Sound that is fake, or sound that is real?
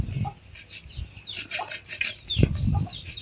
real